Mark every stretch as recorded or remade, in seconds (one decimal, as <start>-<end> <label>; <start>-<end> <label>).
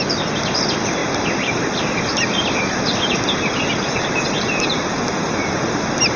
0.0-6.2 remade